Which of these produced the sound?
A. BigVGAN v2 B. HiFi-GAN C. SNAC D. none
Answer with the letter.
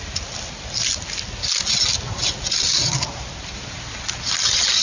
D